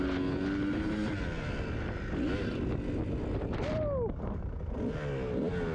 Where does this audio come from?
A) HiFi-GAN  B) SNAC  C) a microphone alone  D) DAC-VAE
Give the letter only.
C